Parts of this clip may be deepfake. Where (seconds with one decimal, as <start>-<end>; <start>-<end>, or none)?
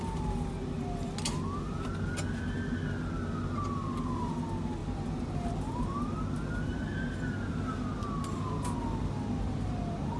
none